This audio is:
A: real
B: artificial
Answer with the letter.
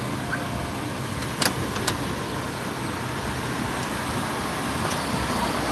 A